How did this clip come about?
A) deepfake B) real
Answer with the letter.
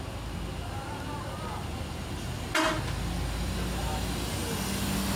B